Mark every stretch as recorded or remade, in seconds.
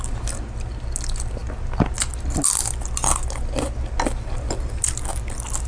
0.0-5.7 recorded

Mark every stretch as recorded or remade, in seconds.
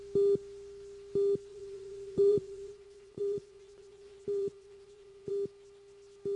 0.0-1.5 recorded; 1.5-5.3 remade; 5.3-6.4 recorded